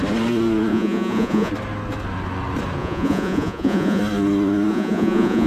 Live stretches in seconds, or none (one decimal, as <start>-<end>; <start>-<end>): 0.0-0.7; 1.5-2.8; 4.0-4.7